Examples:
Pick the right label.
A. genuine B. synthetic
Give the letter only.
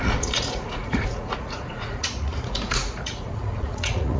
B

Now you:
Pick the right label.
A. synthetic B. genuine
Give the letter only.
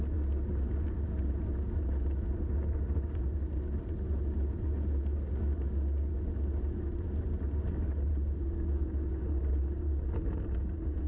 B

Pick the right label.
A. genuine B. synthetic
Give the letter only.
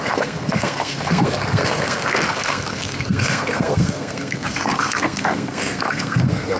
B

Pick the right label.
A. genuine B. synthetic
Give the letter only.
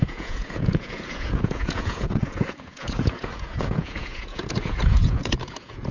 B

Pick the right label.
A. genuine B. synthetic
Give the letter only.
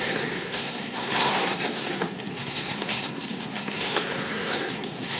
B